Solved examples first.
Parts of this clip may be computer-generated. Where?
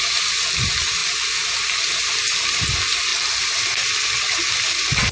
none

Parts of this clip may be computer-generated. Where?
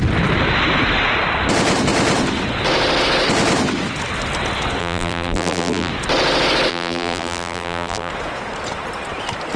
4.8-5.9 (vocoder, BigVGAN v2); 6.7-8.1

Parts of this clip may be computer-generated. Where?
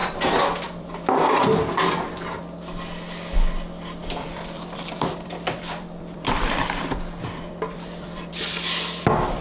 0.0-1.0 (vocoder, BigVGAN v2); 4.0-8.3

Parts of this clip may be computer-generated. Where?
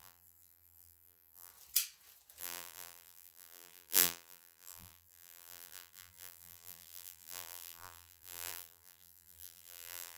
0.0-1.5 (vocoder, BigVGAN v2); 2.4-10.2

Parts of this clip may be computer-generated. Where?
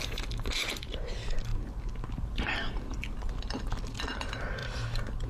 0.0-5.3 (vocoder, BigVGAN v2)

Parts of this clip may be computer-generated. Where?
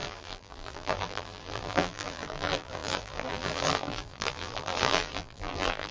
0.0-5.9 (vocoder, BigVGAN v2)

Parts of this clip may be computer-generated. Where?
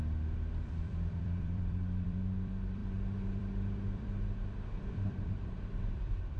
0.0-6.4 (vocoder, BigVGAN v2)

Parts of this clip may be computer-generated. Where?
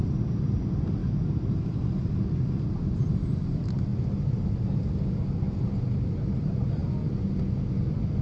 0.0-1.0 (vocoder, BigVGAN v2); 2.5-3.9; 6.3-6.8; 7.3-8.2